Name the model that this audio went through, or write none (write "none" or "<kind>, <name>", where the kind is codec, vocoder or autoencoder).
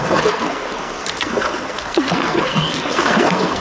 codec, SNAC